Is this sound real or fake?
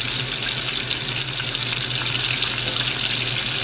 real